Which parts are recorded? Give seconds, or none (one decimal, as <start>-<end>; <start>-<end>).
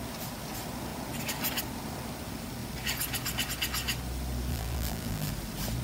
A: 0.0-4.5; 5.3-5.8